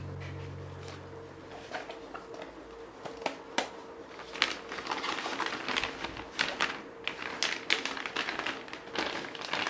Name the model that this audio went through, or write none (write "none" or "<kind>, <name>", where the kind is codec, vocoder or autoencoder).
none